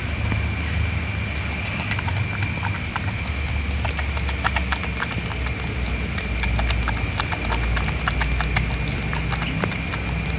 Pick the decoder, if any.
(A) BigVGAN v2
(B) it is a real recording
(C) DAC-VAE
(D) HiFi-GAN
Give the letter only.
B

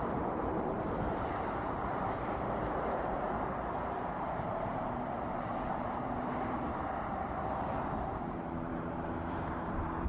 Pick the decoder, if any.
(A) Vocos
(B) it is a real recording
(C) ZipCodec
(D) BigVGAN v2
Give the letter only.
D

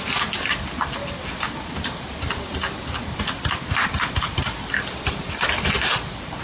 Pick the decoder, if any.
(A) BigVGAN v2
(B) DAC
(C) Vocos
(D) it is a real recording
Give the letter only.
D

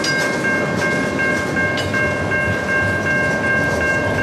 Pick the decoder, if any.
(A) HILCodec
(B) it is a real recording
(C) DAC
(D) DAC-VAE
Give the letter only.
B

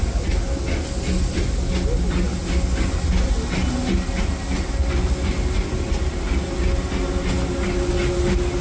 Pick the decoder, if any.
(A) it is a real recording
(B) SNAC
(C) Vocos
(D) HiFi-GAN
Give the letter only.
A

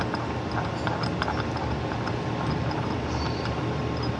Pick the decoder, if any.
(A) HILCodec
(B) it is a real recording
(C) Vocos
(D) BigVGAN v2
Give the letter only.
B